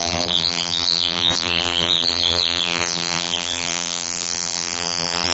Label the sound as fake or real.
fake